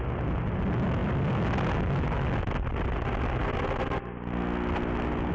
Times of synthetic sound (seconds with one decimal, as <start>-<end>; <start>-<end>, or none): none